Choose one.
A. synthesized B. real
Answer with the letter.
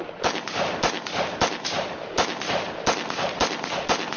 B